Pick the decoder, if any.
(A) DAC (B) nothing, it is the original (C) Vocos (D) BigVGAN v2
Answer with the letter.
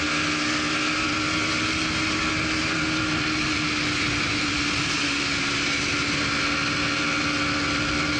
B